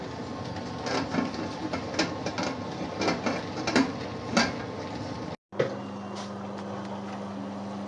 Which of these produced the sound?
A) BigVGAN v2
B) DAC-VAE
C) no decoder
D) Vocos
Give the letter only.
C